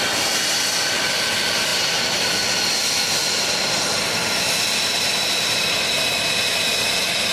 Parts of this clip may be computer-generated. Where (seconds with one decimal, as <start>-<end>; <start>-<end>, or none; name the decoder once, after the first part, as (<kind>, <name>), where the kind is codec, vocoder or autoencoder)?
none